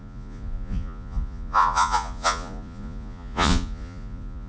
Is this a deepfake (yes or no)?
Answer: yes